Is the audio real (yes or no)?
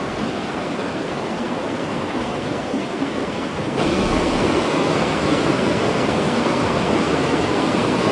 no